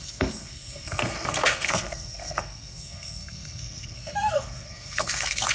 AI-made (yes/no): yes